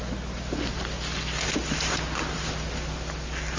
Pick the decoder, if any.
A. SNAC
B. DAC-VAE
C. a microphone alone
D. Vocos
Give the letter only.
C